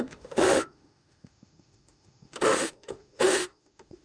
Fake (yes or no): yes